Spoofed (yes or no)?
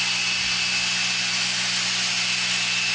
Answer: no